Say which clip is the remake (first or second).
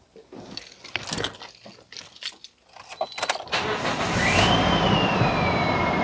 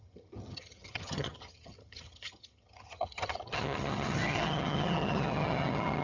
second